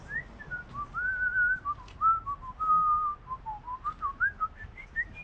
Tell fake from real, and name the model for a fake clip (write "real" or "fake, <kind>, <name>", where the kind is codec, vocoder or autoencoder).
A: real